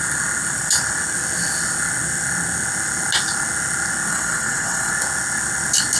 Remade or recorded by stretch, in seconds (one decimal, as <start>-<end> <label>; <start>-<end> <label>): 0.0-4.1 recorded; 4.1-4.9 remade; 4.9-6.0 recorded